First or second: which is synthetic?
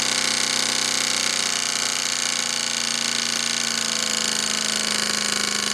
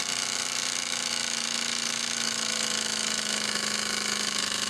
second